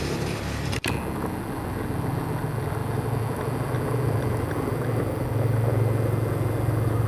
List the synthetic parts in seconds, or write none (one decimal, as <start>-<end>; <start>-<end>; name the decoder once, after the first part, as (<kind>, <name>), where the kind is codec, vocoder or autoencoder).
none